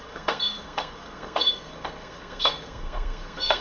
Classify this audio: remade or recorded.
remade